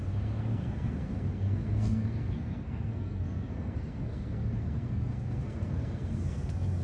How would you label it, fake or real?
fake